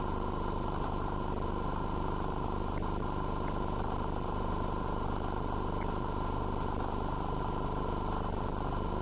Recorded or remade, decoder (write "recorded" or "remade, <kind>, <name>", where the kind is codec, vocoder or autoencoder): recorded